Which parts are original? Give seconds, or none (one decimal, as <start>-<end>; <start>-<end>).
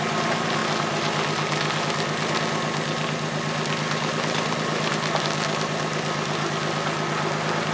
0.0-7.7